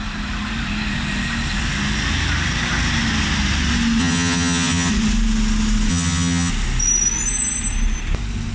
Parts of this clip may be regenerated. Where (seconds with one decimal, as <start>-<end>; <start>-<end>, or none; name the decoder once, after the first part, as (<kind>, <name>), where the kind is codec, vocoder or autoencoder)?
4.0-4.9 (vocoder, HiFi-GAN); 5.9-6.5